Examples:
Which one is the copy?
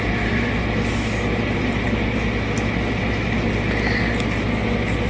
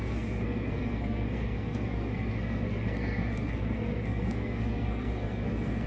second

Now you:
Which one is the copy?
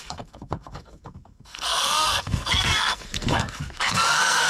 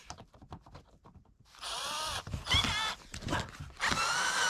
first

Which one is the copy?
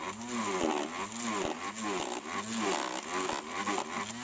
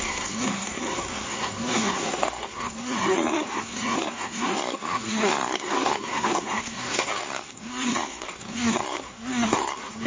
second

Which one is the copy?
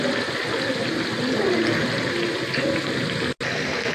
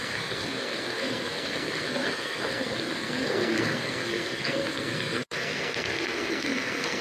second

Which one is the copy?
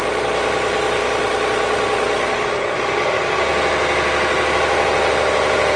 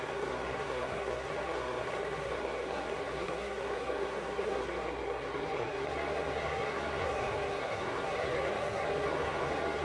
second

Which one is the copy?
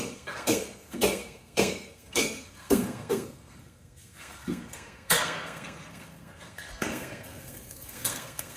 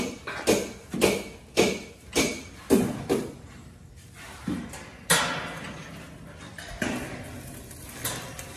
first